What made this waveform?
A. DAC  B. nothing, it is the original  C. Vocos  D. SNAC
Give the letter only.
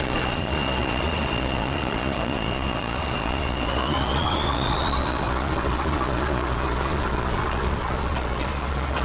C